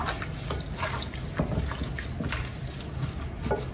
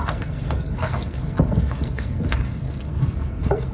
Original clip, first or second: first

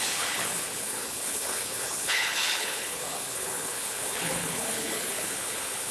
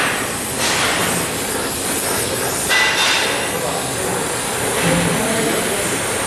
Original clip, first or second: second